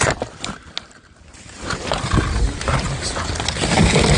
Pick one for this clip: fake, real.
real